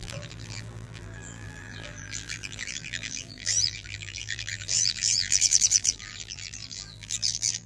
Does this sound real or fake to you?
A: fake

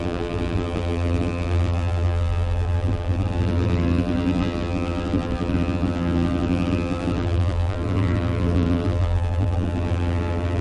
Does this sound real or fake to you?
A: fake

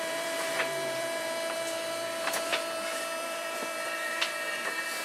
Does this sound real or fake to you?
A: fake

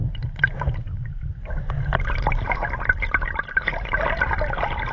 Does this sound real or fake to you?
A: real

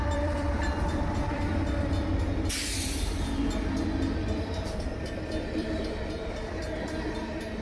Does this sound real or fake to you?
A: fake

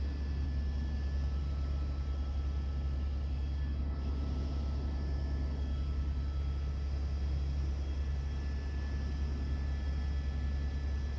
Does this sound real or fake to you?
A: real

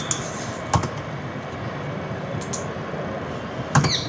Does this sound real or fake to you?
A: real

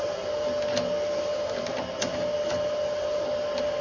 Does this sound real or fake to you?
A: real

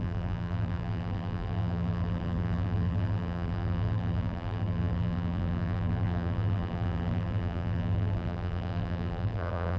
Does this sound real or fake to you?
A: fake